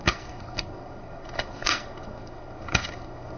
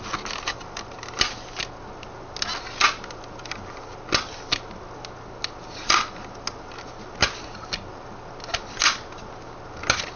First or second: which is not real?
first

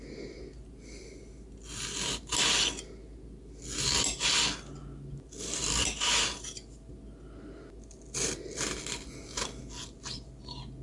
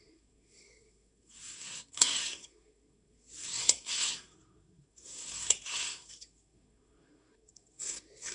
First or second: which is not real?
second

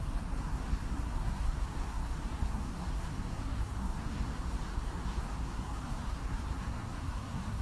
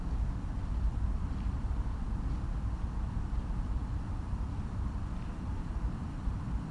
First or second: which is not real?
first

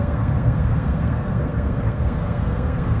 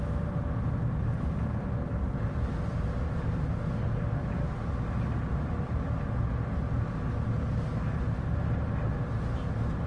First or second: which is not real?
first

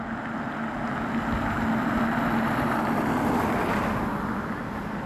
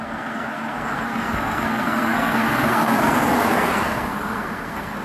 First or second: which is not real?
second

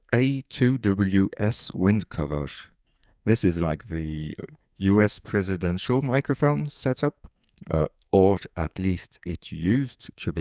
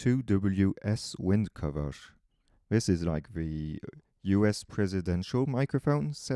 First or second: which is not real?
first